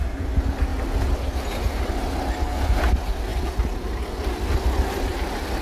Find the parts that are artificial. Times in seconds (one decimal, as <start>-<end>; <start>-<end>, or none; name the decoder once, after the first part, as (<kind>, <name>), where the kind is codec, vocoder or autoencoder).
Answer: none